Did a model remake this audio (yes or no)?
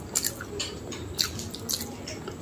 no